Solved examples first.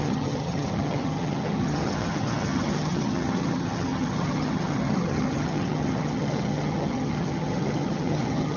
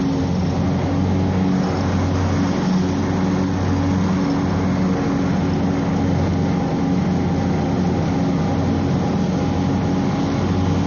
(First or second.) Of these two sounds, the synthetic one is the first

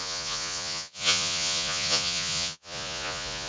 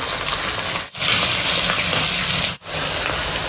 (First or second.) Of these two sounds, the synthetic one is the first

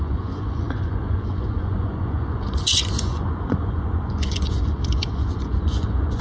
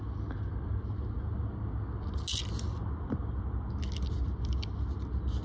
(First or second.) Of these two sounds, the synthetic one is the first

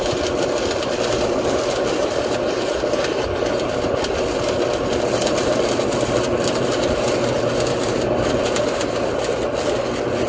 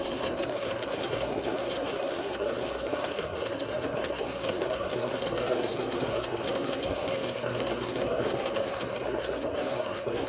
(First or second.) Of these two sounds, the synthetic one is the second